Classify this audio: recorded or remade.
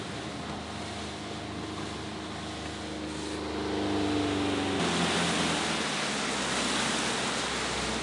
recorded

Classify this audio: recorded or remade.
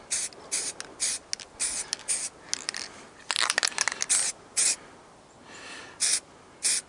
recorded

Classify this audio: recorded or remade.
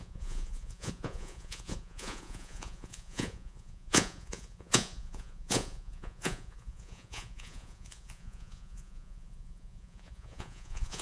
remade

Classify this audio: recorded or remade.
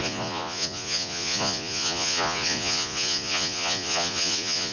remade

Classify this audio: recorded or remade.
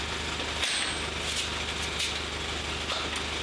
recorded